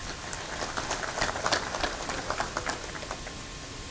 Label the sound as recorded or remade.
recorded